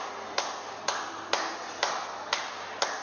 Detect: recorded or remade recorded